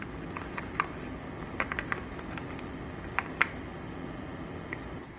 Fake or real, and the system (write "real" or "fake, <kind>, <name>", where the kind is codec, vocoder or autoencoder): real